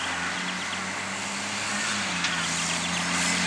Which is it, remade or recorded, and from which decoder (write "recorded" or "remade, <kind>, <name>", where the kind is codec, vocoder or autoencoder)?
recorded